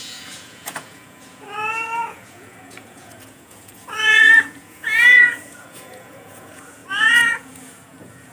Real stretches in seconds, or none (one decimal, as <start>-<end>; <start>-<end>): none